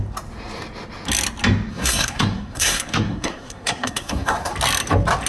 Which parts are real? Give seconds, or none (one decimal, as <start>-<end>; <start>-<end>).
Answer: 0.0-1.7; 4.5-5.3